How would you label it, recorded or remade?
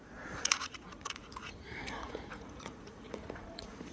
remade